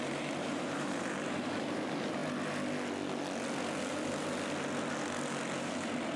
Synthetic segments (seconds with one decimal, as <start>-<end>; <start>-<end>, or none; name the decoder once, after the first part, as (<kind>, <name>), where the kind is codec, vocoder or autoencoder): 0.0-2.2 (vocoder, BigVGAN v2); 5.6-6.2